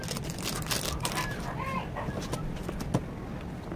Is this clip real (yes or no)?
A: yes